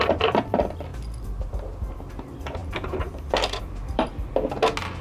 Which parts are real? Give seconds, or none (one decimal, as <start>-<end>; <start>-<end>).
0.9-1.9; 4.1-5.0